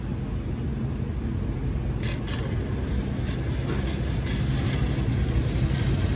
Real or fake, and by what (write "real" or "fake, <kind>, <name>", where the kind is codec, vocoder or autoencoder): real